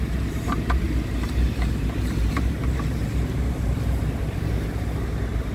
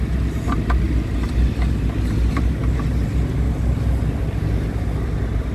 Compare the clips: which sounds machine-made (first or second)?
first